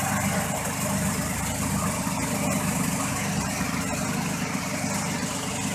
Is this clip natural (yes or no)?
yes